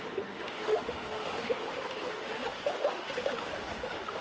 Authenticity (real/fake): fake